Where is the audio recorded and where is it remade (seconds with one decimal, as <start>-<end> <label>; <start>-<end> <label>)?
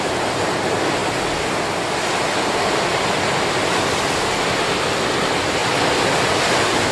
0.0-6.9 recorded